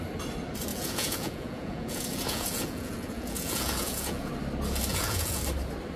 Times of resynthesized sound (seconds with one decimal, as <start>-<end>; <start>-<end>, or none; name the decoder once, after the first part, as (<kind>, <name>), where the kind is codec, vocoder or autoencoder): 0.7-4.3 (vocoder, Vocos); 4.9-5.4